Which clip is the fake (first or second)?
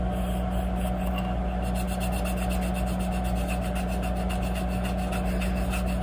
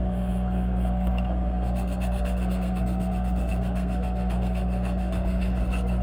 second